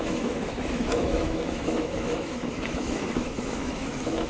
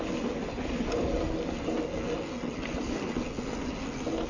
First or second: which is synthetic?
first